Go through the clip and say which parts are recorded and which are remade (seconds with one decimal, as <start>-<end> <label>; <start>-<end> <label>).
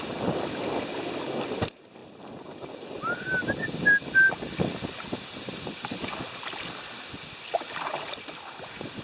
0.0-9.0 recorded